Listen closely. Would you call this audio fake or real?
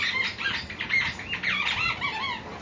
real